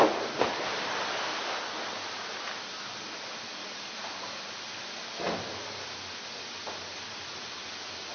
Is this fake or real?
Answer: real